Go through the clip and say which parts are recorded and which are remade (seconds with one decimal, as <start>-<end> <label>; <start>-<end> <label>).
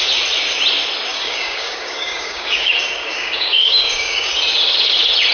0.0-1.1 recorded; 1.1-4.3 remade; 4.3-5.3 recorded